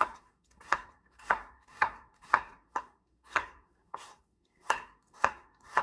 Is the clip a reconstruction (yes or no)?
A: yes